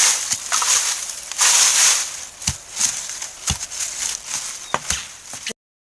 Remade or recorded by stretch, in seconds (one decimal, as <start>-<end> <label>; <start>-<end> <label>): 0.0-5.9 recorded